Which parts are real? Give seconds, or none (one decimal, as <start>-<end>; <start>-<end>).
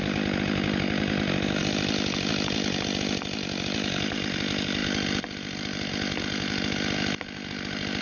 0.0-8.0